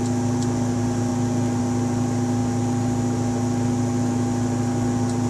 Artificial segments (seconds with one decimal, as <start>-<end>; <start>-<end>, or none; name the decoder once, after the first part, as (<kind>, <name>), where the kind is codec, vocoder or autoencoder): none